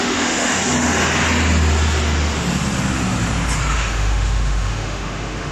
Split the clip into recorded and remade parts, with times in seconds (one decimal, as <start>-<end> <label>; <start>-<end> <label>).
0.0-0.6 remade; 0.6-3.7 recorded; 3.7-5.5 remade